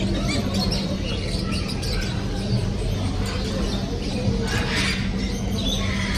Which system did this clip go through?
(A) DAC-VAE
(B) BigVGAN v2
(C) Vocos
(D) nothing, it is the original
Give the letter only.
D